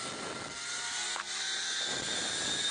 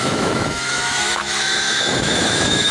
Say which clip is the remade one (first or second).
second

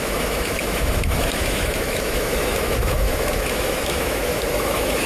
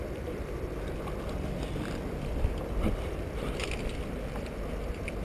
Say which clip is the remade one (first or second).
first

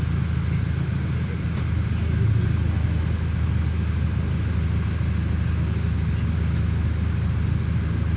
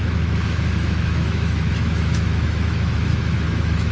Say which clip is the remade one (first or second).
second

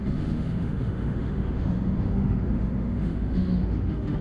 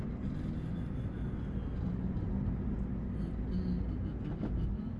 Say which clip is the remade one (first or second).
first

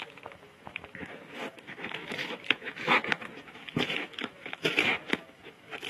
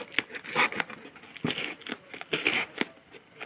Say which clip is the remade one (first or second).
first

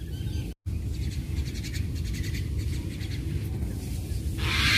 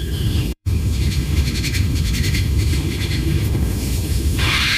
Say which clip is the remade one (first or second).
second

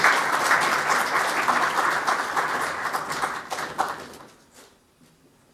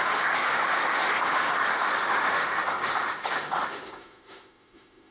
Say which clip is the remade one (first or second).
second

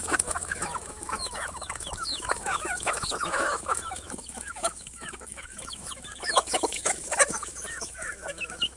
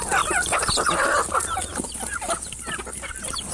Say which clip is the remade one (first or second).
first